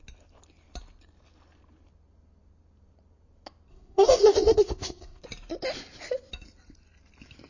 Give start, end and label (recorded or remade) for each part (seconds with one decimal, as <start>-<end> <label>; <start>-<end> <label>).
0.0-3.7 recorded; 3.7-5.2 remade; 5.2-7.5 recorded